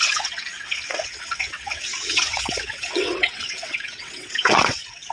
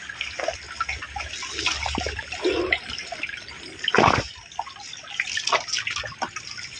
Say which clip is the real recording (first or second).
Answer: second